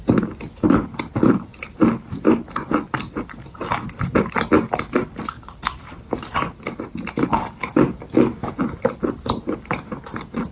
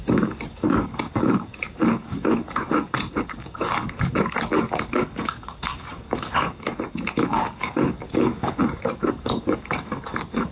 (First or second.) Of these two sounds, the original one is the first